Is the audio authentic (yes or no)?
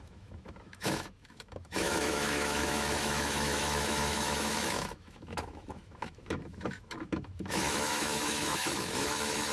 no